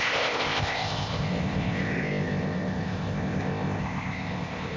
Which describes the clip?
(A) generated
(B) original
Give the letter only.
A